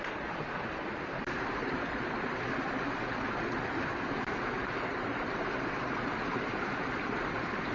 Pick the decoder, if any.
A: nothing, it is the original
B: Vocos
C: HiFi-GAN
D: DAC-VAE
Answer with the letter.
A